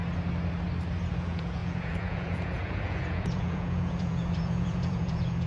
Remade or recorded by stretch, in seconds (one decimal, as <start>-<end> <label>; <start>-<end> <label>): 0.0-1.1 recorded; 1.1-5.5 remade